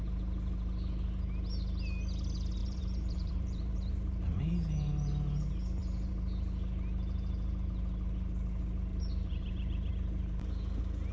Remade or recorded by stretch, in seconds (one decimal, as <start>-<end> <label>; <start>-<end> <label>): 0.0-2.6 recorded; 2.6-4.4 remade; 4.4-8.9 recorded; 8.9-9.9 remade; 9.9-11.1 recorded

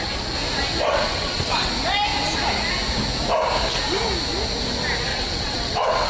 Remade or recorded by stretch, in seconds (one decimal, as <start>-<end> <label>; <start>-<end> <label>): 0.0-0.9 recorded; 0.9-1.7 remade; 1.7-5.1 recorded; 5.1-6.1 remade